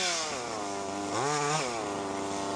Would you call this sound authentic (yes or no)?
yes